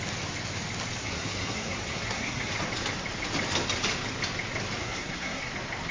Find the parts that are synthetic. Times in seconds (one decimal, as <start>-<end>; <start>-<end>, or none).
1.0-2.5; 4.8-5.5